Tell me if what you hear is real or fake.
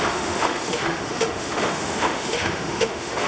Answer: fake